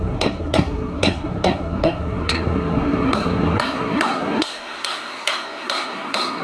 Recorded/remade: remade